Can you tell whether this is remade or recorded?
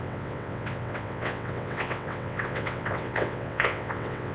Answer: remade